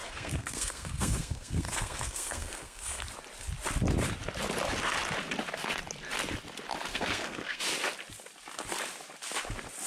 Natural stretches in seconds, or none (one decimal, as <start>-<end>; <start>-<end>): 3.0-6.9; 7.6-9.9